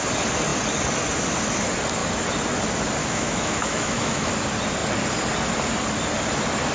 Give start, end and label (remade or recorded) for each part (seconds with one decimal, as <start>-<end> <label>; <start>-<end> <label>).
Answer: 0.0-3.0 recorded; 3.0-4.3 remade; 4.3-6.7 recorded